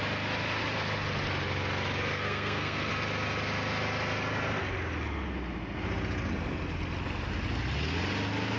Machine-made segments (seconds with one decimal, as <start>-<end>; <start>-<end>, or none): 2.1-2.9